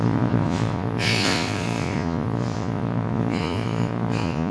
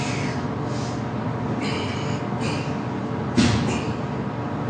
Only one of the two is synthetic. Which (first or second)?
first